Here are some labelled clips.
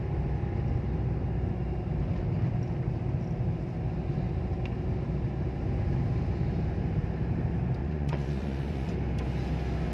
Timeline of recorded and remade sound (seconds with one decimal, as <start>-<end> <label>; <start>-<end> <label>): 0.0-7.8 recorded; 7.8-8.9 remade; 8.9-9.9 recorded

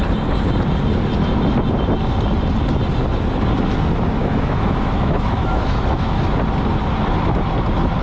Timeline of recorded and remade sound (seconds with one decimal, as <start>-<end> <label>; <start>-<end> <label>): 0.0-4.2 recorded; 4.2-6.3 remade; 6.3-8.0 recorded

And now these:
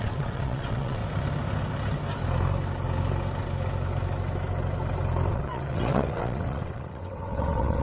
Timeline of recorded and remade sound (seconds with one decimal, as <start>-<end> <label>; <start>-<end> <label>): 0.0-1.0 remade; 1.0-5.3 recorded; 5.3-7.8 remade

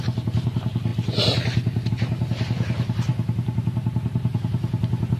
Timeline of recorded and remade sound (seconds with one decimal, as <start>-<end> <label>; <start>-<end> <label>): 0.0-5.2 recorded

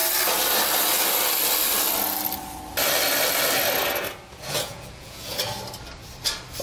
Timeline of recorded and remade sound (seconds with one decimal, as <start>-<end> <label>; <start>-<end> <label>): 0.0-4.3 recorded; 4.3-5.4 remade; 5.4-6.6 recorded